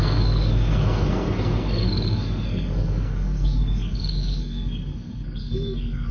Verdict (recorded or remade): remade